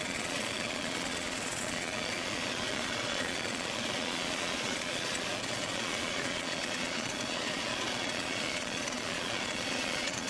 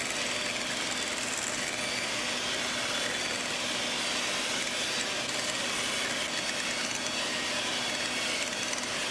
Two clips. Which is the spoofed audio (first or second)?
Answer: first